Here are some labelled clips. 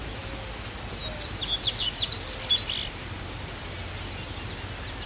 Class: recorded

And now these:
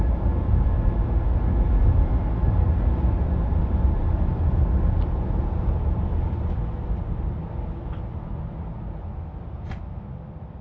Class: recorded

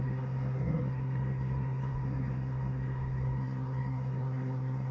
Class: remade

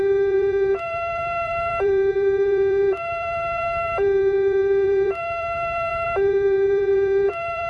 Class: remade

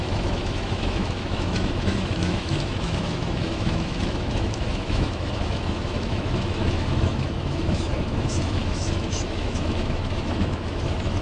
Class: remade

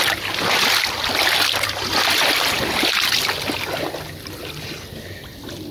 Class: recorded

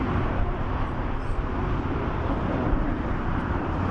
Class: recorded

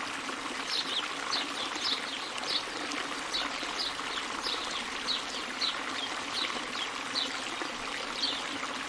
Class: recorded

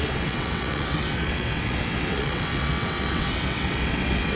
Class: remade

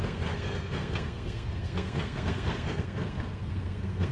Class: remade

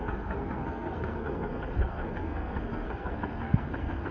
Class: remade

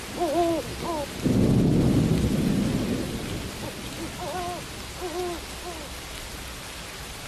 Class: recorded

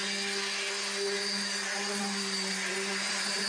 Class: recorded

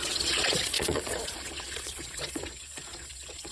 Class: remade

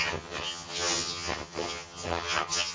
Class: remade